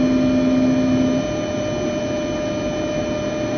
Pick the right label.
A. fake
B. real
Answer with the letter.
B